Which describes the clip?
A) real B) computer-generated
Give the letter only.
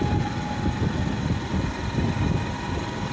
A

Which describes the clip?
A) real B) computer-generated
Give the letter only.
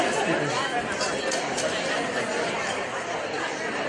A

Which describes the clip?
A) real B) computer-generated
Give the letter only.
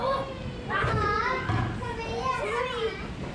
A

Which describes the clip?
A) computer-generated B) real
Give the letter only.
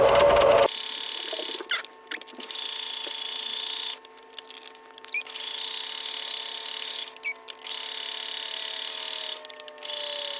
B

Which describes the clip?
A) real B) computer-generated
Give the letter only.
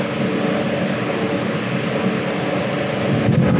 A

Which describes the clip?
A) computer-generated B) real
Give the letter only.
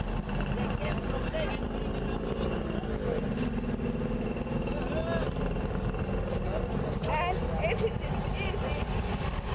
B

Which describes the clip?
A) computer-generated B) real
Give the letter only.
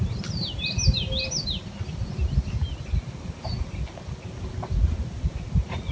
B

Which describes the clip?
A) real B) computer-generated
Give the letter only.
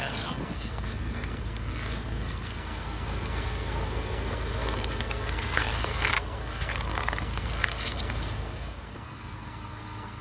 B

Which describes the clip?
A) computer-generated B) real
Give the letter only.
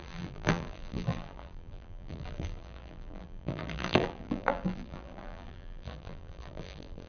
A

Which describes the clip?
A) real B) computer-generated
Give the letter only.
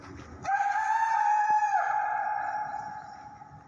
A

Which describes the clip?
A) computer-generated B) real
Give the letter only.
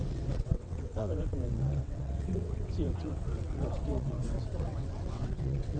A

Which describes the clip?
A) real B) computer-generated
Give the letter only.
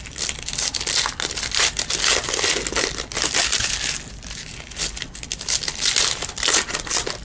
A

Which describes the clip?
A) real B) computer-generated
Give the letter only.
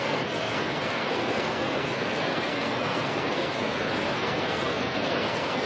B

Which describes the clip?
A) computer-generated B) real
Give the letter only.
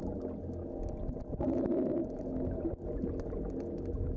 B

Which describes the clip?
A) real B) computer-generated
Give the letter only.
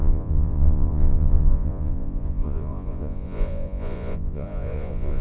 B